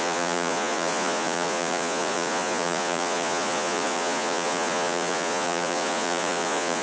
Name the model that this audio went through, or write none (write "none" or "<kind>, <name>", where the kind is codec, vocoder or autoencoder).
vocoder, Vocos